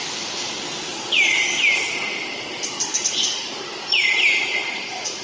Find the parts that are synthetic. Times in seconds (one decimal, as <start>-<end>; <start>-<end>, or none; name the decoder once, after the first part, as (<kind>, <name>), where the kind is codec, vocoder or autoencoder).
4.5-5.2 (vocoder, Vocos)